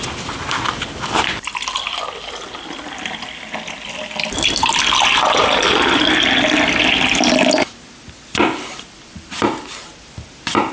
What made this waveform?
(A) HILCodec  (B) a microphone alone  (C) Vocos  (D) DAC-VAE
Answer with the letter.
B